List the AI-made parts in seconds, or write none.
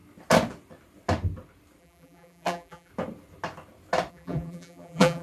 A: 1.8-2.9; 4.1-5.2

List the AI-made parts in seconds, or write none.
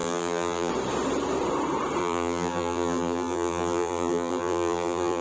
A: 0.0-0.7; 2.0-5.2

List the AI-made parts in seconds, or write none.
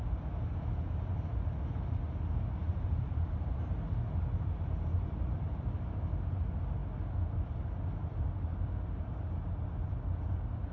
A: 2.6-3.6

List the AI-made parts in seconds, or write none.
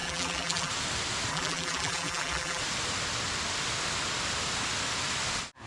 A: 0.0-0.7; 1.3-2.6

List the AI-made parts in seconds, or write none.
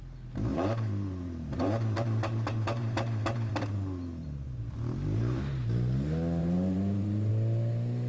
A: 0.5-5.4; 6.4-7.3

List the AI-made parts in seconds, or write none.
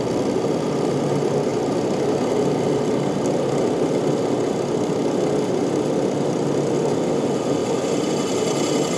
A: 7.6-8.1